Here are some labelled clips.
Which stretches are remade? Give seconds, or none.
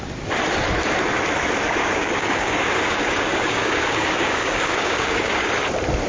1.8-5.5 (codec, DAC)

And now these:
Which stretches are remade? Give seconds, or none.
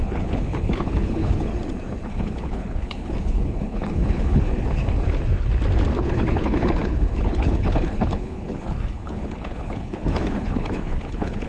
0.0-1.5 (codec, HILCodec); 2.1-4.8; 6.0-11.5